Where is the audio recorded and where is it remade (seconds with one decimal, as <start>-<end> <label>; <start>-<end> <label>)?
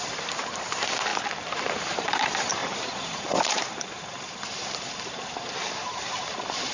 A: 0.0-1.1 remade; 1.1-1.6 recorded; 1.6-6.7 remade